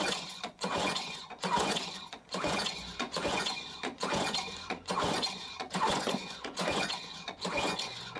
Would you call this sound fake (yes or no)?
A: yes